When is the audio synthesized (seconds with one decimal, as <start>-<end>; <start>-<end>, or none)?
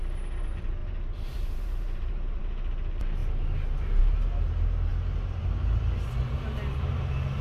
0.8-2.4